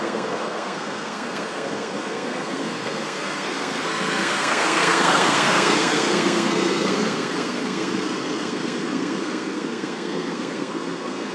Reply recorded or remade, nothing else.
remade